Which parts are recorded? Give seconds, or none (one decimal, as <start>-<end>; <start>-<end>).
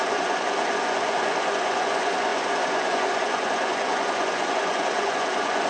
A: none